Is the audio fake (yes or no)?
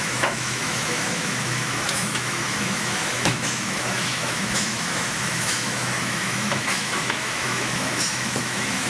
yes